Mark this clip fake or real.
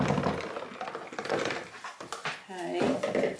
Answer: real